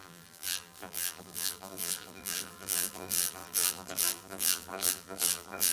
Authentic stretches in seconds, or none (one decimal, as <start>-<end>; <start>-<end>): none